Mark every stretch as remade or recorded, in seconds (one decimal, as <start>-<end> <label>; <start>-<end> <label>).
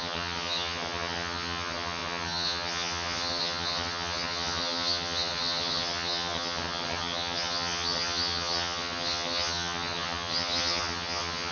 0.0-11.5 remade